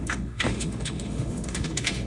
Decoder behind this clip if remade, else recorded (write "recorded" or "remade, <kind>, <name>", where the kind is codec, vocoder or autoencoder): remade, autoencoder, DAC-VAE